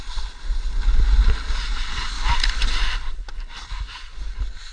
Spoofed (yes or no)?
no